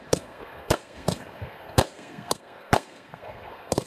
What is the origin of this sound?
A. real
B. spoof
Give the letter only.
B